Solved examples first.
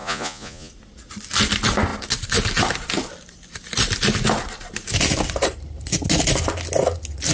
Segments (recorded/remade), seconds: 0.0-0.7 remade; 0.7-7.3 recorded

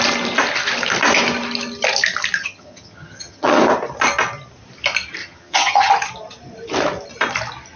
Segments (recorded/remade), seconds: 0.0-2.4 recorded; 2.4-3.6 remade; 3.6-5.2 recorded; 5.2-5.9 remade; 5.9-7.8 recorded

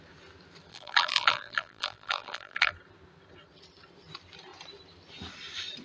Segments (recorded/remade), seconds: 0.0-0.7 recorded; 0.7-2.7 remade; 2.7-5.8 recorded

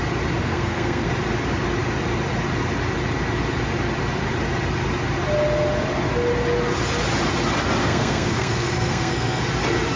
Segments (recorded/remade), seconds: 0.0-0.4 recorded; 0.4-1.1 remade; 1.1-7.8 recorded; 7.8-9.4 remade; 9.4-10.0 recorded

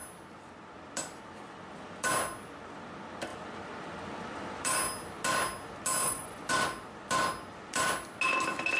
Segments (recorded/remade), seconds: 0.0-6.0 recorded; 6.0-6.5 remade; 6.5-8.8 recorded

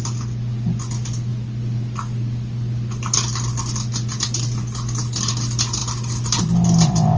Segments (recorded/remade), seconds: 0.0-7.2 recorded

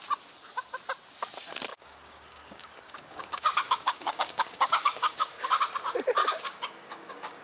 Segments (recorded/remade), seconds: 0.0-1.7 recorded; 1.7-5.6 remade; 5.6-6.2 recorded; 6.2-7.4 remade

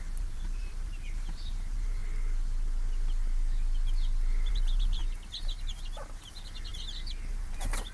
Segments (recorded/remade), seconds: 0.0-2.0 remade; 2.0-4.5 recorded; 4.5-5.0 remade; 5.0-6.3 recorded; 6.3-6.7 remade; 6.7-7.3 recorded; 7.3-7.9 remade